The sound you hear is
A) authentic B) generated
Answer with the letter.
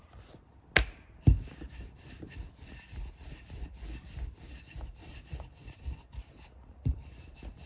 A